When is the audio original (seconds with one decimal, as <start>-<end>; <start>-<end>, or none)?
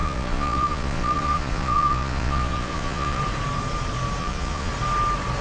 3.2-4.2; 4.7-5.4